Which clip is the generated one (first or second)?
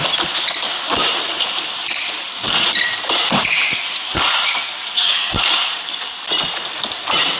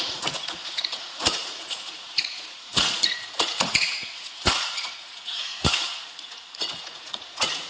second